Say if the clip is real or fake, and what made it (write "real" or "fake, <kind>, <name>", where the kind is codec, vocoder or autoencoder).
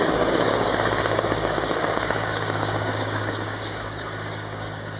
fake, codec, DAC